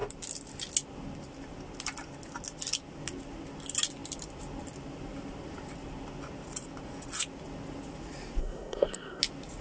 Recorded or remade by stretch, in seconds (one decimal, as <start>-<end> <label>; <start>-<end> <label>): 0.0-8.4 recorded; 8.4-9.2 remade; 9.2-9.6 recorded